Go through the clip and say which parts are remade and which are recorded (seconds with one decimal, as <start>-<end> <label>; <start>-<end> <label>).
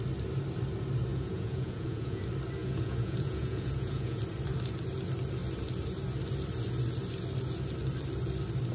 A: 0.0-1.1 recorded; 1.1-2.2 remade; 2.2-2.6 recorded; 2.6-4.2 remade; 4.2-8.7 recorded